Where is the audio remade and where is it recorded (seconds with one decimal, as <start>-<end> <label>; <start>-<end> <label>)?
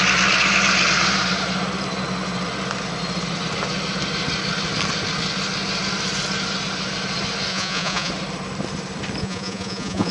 0.0-7.5 recorded; 7.5-8.1 remade; 8.1-9.2 recorded; 9.2-10.1 remade